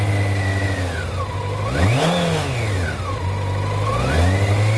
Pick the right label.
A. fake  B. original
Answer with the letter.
B